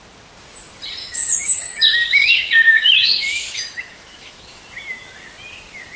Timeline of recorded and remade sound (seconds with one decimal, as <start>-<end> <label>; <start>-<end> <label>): 0.0-1.0 recorded; 1.0-4.6 remade; 4.6-6.0 recorded